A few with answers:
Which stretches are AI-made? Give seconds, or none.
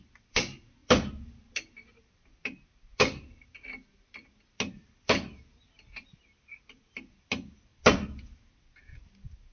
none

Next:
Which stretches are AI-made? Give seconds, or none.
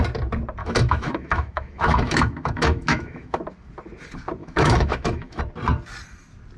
0.6-3.4 (autoencoder, DAC-VAE); 4.4-5.4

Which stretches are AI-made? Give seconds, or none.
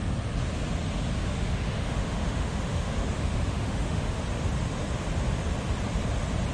1.3-4.2 (autoencoder, DAC-VAE)